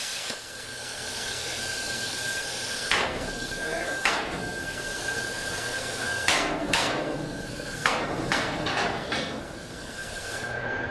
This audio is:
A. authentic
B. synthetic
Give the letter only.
B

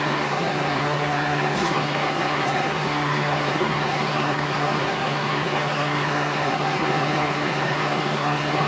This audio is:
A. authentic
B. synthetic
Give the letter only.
B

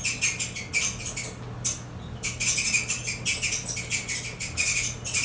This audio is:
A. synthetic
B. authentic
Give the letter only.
B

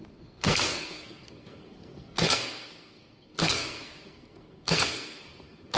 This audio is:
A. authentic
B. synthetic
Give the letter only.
B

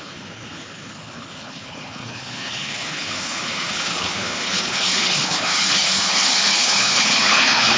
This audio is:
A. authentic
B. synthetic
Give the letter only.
B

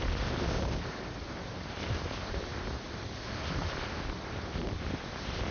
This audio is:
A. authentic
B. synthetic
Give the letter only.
A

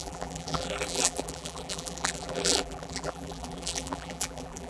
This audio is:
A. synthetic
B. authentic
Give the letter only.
A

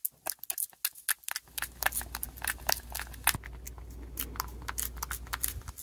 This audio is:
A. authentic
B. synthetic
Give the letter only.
A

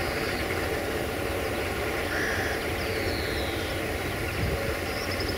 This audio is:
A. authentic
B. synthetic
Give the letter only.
A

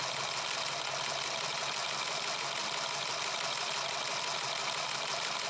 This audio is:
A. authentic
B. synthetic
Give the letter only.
A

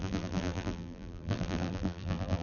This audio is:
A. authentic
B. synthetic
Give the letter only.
B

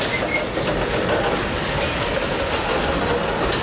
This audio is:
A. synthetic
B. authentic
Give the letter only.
B